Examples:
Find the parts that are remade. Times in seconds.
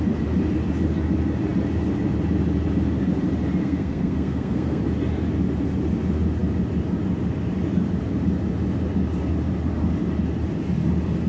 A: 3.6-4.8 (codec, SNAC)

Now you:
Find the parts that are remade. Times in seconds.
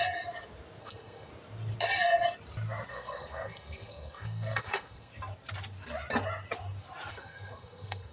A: 0.8-1.3 (codec, SNAC); 2.9-5.1; 7.1-8.1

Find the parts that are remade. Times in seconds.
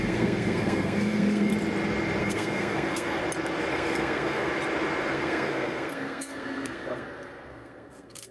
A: 0.0-1.5 (codec, SNAC); 2.2-3.2; 3.7-4.5; 5.0-8.3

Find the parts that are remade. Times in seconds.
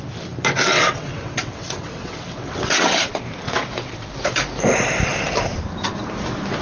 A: 0.7-4.1 (vocoder, WaveNeXt)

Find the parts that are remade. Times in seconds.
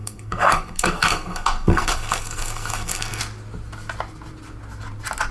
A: 0.0-3.2 (codec, SNAC)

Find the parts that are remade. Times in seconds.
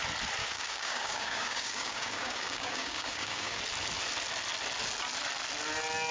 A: 0.4-3.6 (codec, DAC)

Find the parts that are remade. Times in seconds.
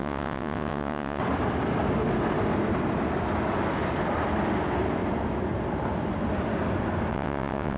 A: 0.0-1.2 (vocoder, WaveNeXt); 7.1-7.8